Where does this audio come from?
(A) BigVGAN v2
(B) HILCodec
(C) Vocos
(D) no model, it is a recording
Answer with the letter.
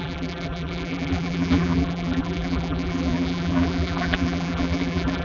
A